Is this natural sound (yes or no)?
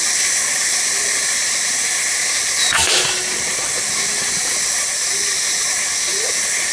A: yes